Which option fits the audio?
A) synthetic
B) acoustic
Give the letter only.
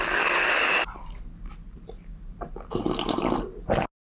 B